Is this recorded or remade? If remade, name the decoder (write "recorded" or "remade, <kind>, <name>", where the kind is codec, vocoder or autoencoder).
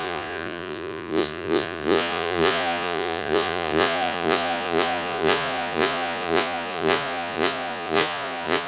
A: remade, vocoder, Vocos